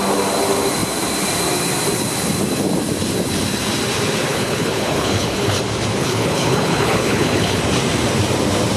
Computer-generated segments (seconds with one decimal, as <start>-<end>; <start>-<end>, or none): 4.3-5.6; 6.0-7.6